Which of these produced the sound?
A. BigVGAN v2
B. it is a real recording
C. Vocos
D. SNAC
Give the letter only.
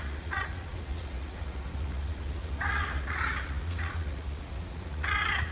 C